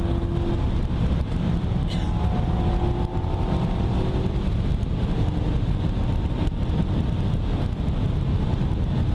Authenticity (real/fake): real